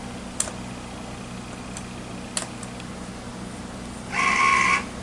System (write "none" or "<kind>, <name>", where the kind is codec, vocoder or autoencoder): none